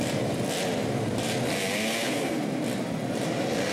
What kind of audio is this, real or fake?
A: real